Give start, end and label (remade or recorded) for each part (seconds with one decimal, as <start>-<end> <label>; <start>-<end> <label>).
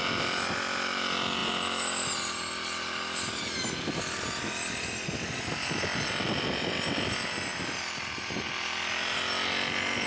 0.0-10.1 recorded